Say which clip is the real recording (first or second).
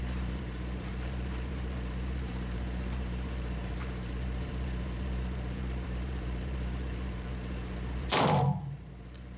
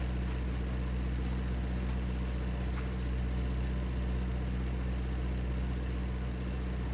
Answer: second